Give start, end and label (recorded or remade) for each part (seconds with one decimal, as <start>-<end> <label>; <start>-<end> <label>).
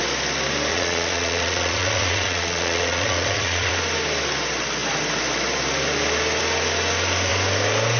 0.0-0.7 recorded; 0.7-3.7 remade; 3.7-8.0 recorded